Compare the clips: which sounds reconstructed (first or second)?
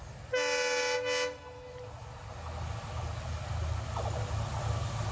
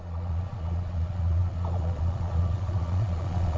second